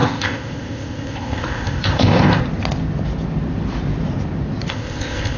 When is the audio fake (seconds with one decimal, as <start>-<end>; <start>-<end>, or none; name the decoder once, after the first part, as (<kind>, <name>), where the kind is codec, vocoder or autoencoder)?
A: 0.0-2.4 (codec, ZipCodec); 4.7-5.4

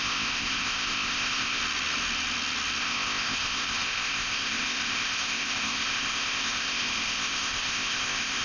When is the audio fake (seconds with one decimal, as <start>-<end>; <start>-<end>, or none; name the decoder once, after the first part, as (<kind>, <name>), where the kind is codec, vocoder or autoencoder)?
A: 0.0-1.6 (codec, ZipCodec); 2.8-8.4

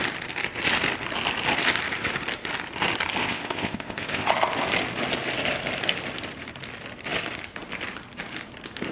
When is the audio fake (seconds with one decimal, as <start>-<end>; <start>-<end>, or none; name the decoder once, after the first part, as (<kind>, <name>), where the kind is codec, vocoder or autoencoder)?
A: 3.2-4.3 (codec, ZipCodec)

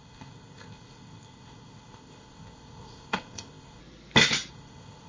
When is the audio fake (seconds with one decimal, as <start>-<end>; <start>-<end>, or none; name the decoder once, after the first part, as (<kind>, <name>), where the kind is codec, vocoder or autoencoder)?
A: 0.0-3.8 (codec, ZipCodec); 4.5-5.1